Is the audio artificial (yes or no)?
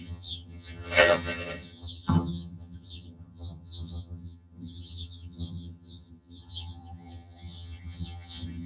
yes